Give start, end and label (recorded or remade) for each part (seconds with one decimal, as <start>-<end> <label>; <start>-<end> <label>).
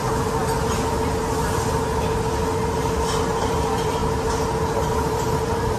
0.0-0.4 remade; 0.4-3.2 recorded; 3.2-4.0 remade; 4.0-4.8 recorded; 4.8-5.8 remade